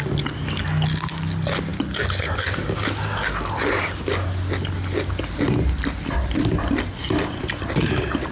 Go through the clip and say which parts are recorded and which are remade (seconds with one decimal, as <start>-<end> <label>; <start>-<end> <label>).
0.0-8.3 recorded